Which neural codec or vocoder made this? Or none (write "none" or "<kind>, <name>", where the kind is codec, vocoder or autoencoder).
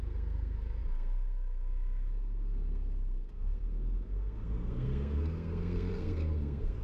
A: codec, SNAC